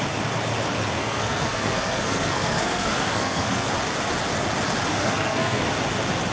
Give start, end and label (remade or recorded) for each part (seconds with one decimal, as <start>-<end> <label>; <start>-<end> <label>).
0.0-1.0 recorded; 1.0-3.7 remade; 3.7-4.9 recorded; 4.9-5.6 remade; 5.6-6.3 recorded